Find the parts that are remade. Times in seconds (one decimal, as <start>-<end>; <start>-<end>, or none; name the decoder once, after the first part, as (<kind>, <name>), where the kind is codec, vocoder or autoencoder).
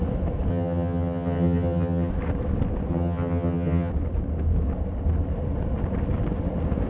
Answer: 0.5-2.1 (vocoder, HiFi-GAN); 2.9-3.9